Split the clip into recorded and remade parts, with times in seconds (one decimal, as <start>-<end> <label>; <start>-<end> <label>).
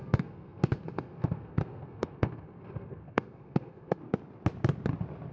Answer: 0.0-4.0 remade; 4.0-5.3 recorded